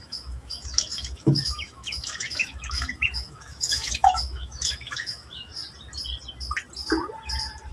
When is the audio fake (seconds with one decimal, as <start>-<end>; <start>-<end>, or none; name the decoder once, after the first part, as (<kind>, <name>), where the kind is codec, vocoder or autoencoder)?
0.0-5.5 (autoencoder, DAC-VAE)